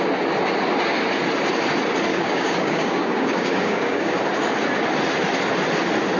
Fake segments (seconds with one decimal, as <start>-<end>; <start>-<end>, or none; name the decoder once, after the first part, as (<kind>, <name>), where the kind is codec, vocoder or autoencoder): 2.1-4.2 (codec, DAC)